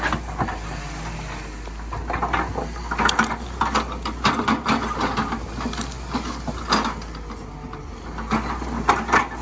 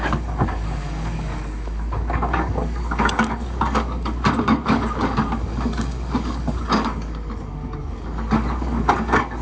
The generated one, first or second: second